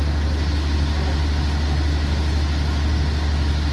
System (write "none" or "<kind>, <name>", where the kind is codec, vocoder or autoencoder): none